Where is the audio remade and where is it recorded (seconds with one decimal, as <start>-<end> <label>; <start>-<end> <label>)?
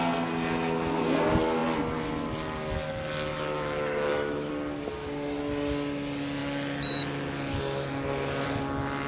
0.0-3.3 recorded; 3.3-4.5 remade; 4.5-9.1 recorded